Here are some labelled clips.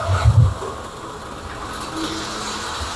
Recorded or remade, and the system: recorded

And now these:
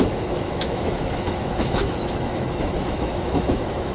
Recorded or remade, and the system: remade, autoencoder, DAC-VAE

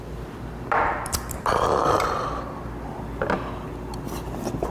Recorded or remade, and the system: recorded